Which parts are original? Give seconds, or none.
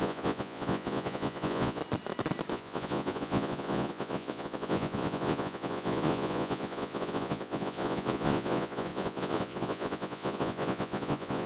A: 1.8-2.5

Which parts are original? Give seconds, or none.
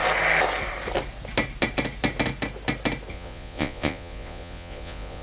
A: 0.0-3.1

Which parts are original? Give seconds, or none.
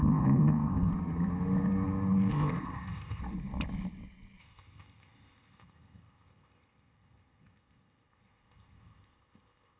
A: 0.9-2.3; 3.2-4.4